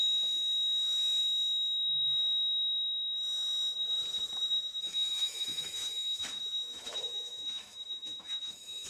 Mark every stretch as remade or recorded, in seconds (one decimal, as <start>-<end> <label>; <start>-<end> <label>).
0.0-1.2 recorded; 1.2-2.2 remade; 2.2-4.9 recorded; 4.9-8.9 remade